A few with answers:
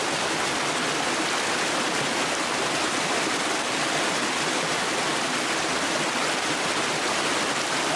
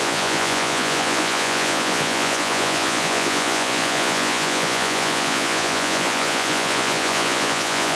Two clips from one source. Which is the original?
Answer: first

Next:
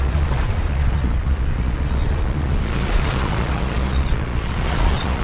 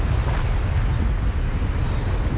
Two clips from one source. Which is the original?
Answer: second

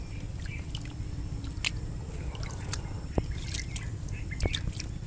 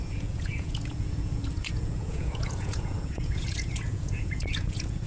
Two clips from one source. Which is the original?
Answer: first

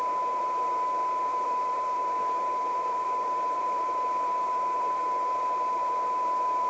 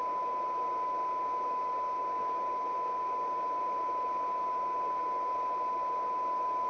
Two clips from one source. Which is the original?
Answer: second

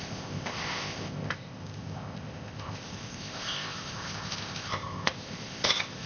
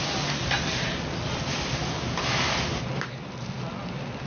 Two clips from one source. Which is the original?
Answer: second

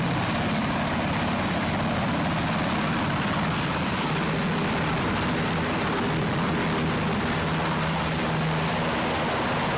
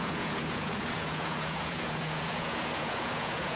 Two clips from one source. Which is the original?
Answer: first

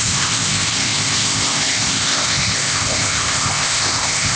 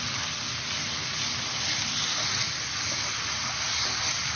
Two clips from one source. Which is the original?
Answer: second